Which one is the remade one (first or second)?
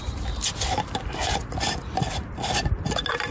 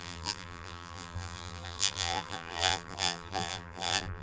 second